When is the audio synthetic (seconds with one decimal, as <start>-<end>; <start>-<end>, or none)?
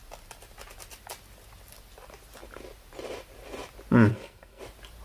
4.1-4.6